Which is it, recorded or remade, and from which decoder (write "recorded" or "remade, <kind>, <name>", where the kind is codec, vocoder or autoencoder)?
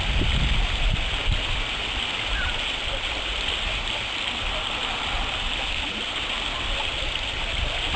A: recorded